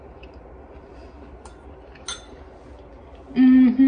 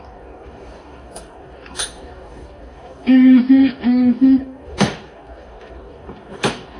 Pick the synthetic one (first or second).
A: second